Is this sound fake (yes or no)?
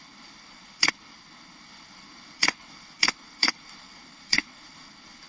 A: yes